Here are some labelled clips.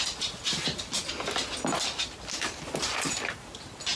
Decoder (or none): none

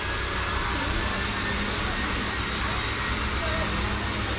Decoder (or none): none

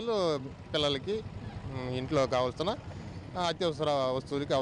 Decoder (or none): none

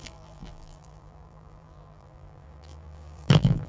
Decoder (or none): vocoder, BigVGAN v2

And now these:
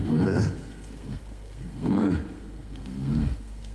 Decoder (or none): codec, SNAC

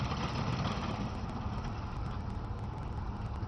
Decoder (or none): none